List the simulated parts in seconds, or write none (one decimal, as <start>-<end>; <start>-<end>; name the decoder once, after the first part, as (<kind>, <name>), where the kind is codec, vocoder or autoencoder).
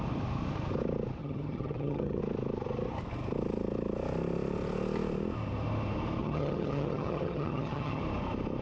1.2-2.2 (vocoder, HiFi-GAN); 6.2-8.0